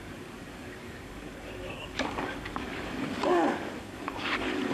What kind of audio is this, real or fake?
fake